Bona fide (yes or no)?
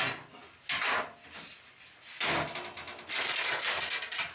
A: yes